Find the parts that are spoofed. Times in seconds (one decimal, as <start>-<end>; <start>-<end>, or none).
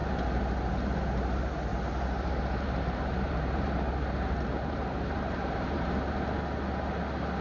1.7-6.1